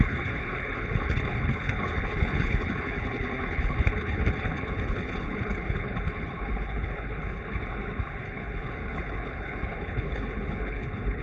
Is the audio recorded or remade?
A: remade